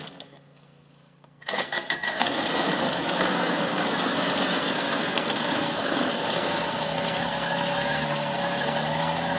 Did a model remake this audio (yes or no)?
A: yes